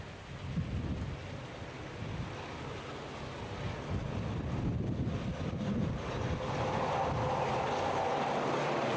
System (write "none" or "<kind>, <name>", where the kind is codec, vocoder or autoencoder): none